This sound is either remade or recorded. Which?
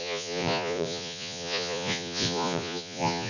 remade